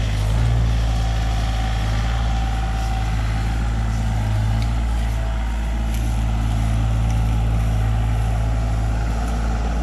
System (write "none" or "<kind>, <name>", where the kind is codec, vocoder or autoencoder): none